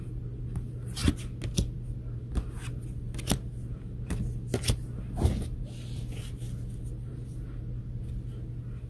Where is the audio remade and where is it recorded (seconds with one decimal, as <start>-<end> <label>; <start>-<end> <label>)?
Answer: 0.0-8.9 recorded